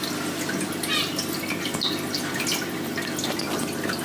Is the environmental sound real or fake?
real